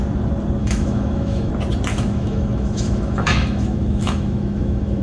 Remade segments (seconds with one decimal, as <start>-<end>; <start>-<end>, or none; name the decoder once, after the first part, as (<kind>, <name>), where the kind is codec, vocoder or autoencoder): 0.6-1.5 (autoencoder, DAC-VAE); 1.9-5.0